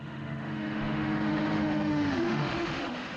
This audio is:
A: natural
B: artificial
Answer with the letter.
B